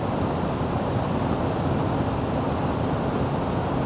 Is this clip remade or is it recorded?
recorded